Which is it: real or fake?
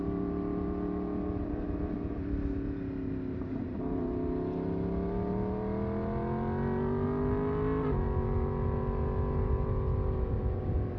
real